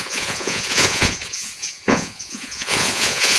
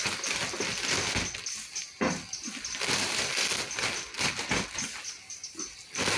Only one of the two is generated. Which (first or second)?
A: first